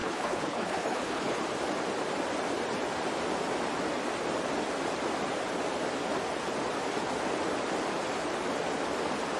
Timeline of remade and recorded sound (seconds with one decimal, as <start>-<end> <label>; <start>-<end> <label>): 0.0-1.4 remade; 1.4-9.4 recorded